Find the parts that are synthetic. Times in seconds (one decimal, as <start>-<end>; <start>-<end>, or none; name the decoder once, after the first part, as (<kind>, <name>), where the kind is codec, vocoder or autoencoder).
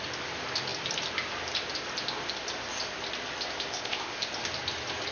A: 3.7-4.3 (codec, ZipCodec)